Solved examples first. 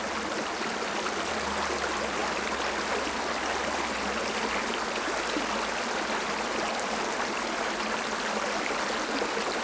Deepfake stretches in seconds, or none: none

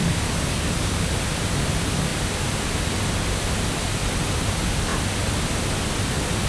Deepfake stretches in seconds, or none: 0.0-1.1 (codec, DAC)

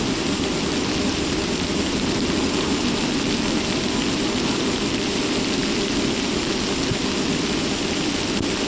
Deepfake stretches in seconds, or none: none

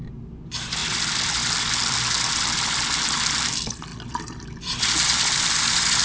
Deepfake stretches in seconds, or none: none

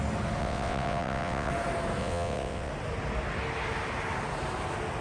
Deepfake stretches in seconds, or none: 0.4-1.5 (vocoder, WaveNeXt); 2.0-2.7

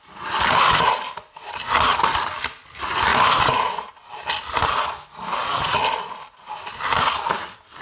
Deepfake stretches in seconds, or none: 3.1-3.9 (vocoder, BigVGAN v2)

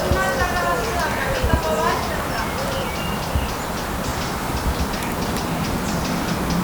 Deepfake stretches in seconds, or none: 2.0-2.7 (vocoder, BigVGAN v2)

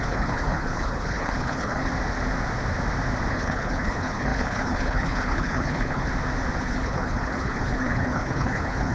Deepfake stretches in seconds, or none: 0.0-1.9 (codec, HILCodec); 3.3-6.1; 6.6-8.9